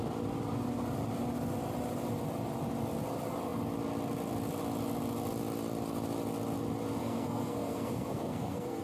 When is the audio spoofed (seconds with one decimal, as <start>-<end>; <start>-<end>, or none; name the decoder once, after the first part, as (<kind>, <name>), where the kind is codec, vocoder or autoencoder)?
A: 7.0-8.8 (codec, SNAC)